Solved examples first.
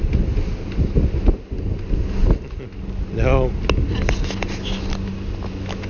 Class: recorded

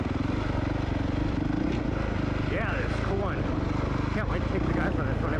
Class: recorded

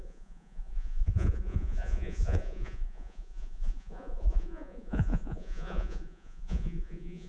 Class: remade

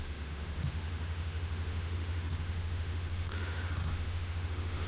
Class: remade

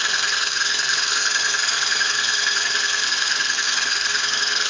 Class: remade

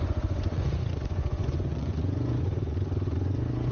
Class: remade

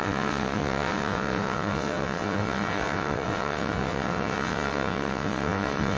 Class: remade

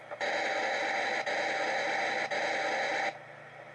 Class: recorded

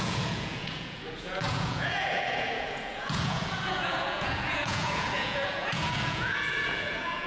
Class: remade